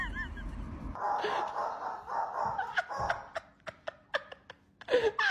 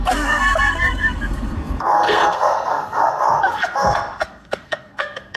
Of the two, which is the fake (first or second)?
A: second